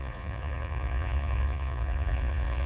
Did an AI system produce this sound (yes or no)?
yes